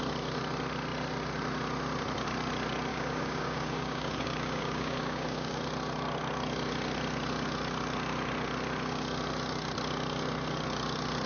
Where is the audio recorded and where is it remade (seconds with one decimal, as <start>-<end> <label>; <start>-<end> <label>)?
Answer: 0.0-2.9 recorded; 2.9-5.6 remade; 5.6-11.3 recorded